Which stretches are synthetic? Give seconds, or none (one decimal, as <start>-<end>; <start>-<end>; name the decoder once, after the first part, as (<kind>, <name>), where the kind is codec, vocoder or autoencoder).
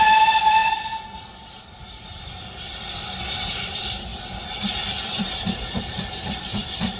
0.0-4.1 (vocoder, BigVGAN v2); 5.8-7.0